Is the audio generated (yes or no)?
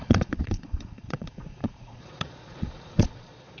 yes